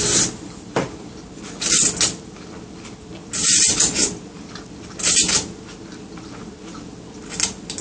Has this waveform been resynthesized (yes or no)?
no